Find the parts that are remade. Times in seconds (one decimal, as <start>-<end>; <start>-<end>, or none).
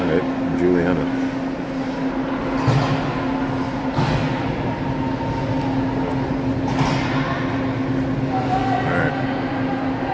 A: 8.6-9.1